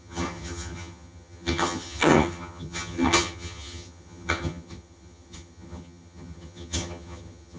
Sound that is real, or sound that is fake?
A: fake